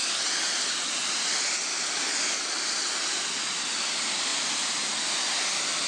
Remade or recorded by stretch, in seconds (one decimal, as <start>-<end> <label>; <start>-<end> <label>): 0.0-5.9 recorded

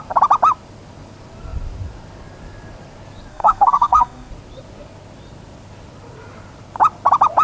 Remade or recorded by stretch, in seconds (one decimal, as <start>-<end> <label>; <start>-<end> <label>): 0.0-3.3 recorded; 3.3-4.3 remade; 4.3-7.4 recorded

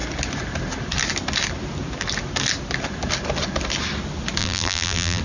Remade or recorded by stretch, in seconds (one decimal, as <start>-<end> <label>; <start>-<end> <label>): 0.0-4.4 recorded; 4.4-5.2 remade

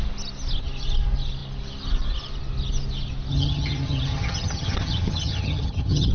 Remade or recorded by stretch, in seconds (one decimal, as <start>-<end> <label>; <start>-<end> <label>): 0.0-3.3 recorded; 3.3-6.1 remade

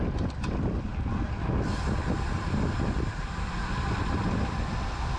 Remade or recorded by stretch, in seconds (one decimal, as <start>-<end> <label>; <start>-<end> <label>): 0.0-5.2 recorded

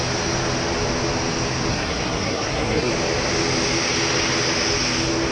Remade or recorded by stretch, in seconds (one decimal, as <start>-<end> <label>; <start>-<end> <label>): 0.0-1.7 recorded; 1.7-2.9 remade; 2.9-5.3 recorded

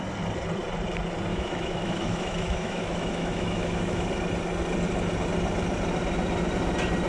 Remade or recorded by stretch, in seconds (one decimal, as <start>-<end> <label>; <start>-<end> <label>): 0.0-1.3 recorded; 1.3-4.1 remade; 4.1-7.1 recorded